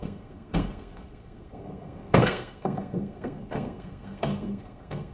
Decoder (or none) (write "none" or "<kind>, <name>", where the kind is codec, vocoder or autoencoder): codec, SNAC